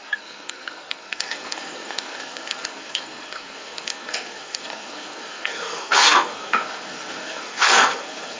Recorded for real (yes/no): no